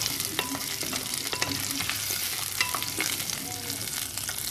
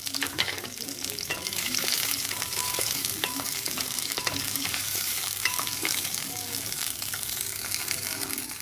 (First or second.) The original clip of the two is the first